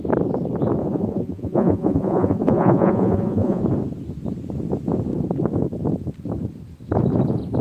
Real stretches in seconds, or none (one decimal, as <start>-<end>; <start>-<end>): 0.0-0.8; 3.6-7.6